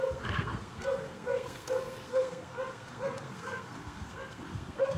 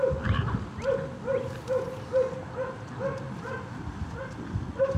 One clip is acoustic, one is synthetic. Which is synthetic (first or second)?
first